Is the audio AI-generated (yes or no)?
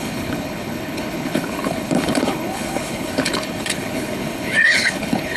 yes